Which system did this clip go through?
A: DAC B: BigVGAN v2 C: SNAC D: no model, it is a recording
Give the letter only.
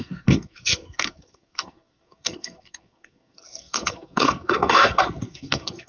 C